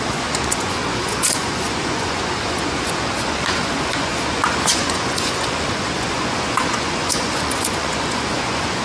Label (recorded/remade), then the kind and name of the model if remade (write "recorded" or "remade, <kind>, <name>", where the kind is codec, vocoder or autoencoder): remade, vocoder, Vocos